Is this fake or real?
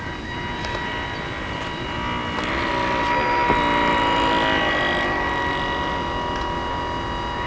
real